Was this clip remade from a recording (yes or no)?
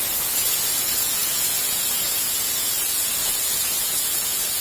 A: yes